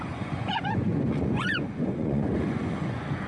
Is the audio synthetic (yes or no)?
yes